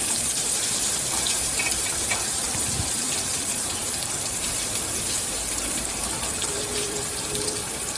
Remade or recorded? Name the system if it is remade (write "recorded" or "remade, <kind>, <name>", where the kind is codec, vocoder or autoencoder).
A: remade, vocoder, BigVGAN v2